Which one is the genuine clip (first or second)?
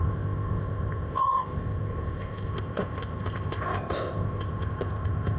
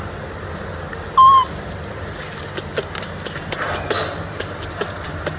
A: second